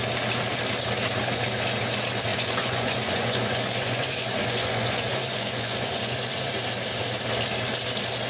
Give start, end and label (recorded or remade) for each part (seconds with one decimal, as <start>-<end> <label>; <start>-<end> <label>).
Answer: 0.0-2.3 recorded; 2.3-6.5 remade; 6.5-8.3 recorded